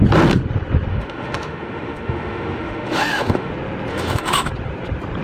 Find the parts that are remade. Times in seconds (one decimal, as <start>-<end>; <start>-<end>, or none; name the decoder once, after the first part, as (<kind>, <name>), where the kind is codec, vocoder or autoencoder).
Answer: 0.9-3.5 (autoencoder, DAC-VAE); 3.9-4.5